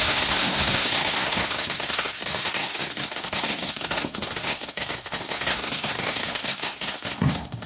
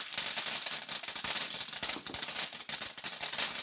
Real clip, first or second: second